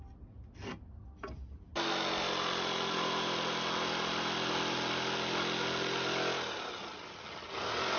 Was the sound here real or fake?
real